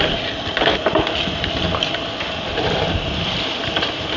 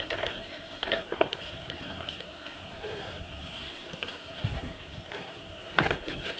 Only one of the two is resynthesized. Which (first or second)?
second